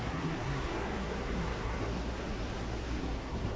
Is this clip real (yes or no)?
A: no